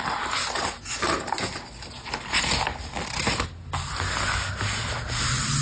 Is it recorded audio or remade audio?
recorded